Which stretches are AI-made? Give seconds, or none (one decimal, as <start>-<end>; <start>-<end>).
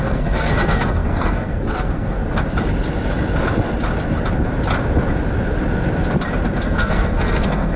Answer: 0.0-2.2; 6.6-7.8